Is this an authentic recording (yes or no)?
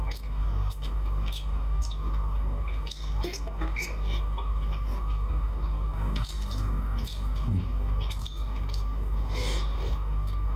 no